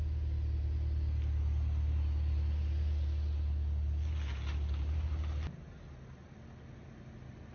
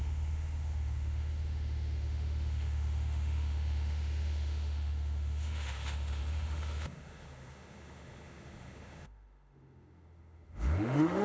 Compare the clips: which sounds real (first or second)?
first